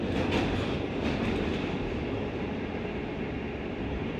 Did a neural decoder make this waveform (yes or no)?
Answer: no